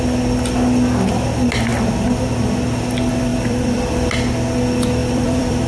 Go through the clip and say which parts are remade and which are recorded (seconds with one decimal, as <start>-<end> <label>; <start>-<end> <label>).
0.0-3.3 recorded; 3.3-3.9 remade; 3.9-5.0 recorded; 5.0-5.7 remade